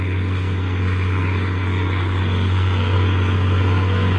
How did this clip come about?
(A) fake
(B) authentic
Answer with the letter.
A